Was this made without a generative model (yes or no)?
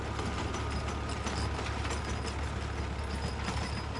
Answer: yes